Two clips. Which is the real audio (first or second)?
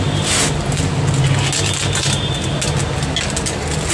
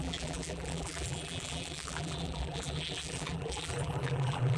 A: first